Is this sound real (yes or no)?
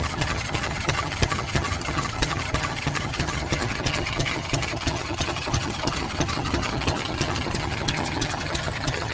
no